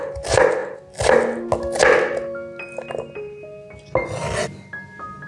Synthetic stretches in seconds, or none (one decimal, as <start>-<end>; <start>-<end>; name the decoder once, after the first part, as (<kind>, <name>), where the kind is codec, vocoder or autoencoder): none